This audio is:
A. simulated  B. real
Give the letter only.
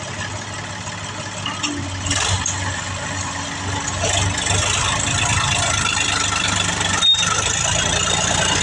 B